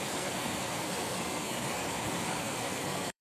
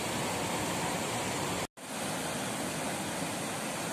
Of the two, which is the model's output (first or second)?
first